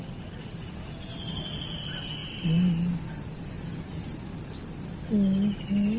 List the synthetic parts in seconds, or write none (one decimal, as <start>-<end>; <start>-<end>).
none